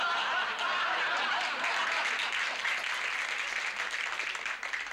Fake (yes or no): no